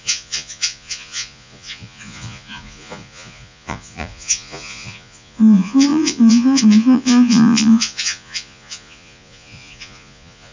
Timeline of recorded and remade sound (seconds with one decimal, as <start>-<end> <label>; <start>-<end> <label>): 0.0-10.5 remade